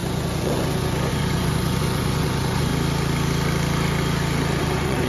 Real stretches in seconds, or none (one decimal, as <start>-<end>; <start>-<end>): 2.7-4.6

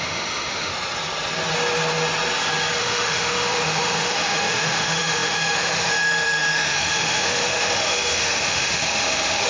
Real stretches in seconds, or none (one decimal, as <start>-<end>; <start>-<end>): 0.7-2.8

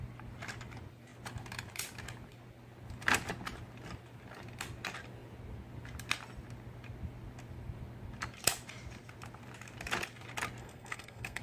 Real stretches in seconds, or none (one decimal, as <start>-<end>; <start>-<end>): 0.0-10.6

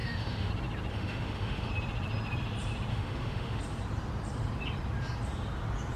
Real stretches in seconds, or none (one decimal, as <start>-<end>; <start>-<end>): 0.5-0.9; 1.7-2.9; 3.6-6.0

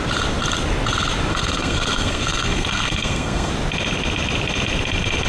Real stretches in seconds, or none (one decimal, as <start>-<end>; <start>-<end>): 0.0-1.3; 3.5-5.3

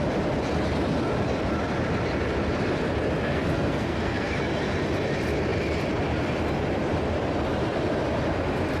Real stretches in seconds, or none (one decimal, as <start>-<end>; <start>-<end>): 0.0-3.3; 4.4-8.8